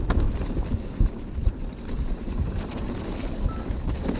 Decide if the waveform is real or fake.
fake